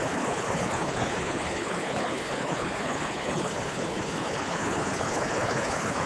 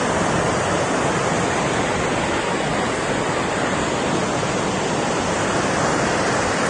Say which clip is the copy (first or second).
first